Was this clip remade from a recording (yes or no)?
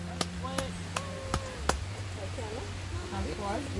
no